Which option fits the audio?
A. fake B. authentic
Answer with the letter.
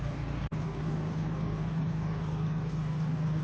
A